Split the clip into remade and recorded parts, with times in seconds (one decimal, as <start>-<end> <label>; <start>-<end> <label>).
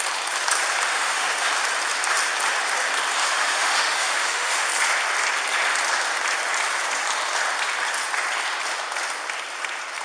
0.0-0.9 recorded; 0.9-1.5 remade; 1.5-3.2 recorded; 3.2-4.7 remade; 4.7-10.0 recorded